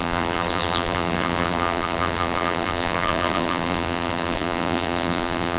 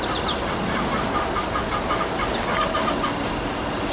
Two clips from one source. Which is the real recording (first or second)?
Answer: second